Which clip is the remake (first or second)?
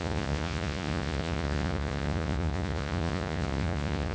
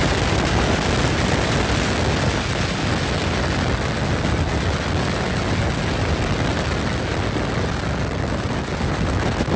first